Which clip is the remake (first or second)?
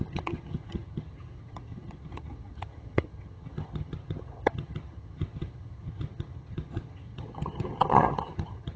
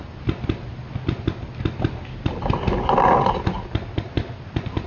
first